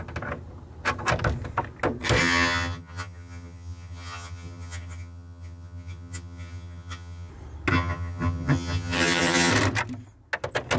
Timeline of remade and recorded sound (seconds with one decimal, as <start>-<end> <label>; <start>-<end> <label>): 0.0-2.2 recorded; 2.2-7.3 remade; 7.3-7.7 recorded; 7.7-9.5 remade; 9.5-10.8 recorded